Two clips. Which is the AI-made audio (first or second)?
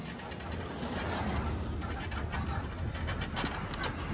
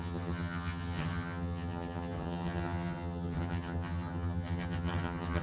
second